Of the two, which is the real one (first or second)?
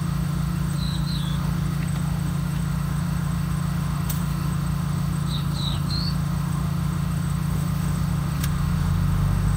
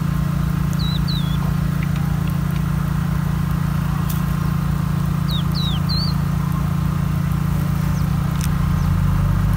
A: second